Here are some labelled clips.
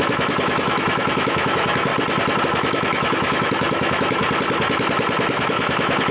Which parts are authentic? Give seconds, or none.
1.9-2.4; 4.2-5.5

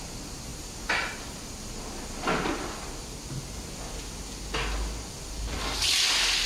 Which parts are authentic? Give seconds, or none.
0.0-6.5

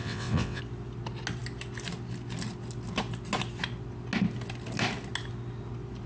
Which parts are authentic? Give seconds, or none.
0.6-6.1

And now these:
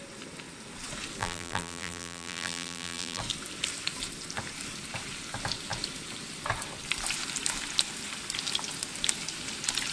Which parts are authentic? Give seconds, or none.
0.0-1.2; 3.2-9.9

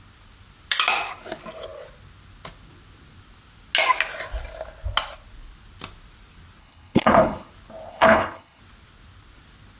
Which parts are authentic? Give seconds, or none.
0.0-6.6; 7.5-7.9; 8.6-9.8

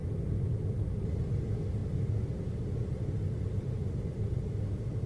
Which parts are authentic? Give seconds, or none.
0.0-5.1